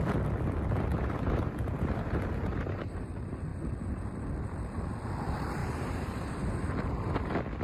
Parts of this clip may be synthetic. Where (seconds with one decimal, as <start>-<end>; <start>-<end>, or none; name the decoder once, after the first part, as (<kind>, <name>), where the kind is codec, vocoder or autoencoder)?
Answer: 0.9-3.0 (vocoder, BigVGAN v2); 5.6-6.3